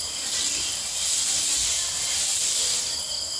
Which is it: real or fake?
real